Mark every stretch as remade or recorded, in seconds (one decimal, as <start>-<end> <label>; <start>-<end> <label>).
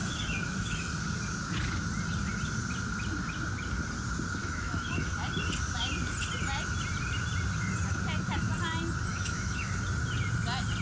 0.0-1.0 remade; 1.0-4.4 recorded; 4.4-5.1 remade; 5.1-9.1 recorded; 9.1-9.7 remade; 9.7-10.8 recorded